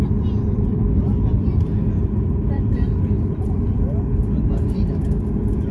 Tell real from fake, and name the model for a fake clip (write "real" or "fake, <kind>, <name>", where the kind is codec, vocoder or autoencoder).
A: fake, vocoder, BigVGAN v2